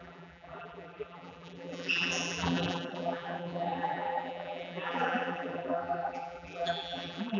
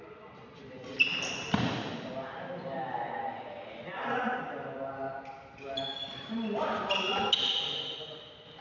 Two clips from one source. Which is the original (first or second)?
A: second